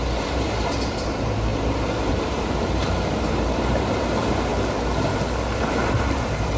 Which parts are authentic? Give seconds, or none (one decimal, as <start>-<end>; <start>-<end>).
1.5-2.1; 4.5-5.6